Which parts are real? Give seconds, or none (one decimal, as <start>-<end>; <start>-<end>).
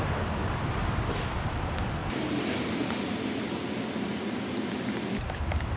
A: 0.0-5.8